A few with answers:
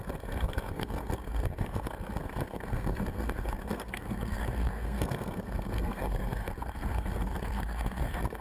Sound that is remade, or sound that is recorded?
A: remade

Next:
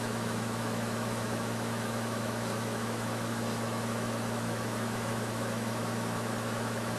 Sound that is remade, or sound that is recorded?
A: remade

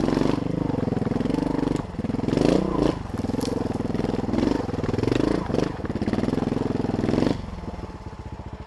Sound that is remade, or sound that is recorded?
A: recorded